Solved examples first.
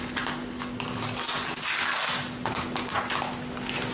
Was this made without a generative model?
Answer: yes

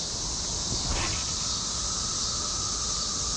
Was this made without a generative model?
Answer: yes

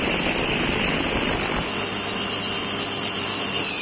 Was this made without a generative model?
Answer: yes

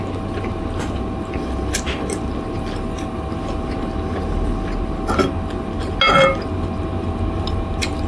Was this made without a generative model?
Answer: yes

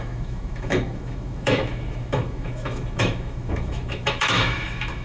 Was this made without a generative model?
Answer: no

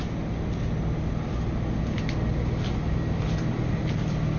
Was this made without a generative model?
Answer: yes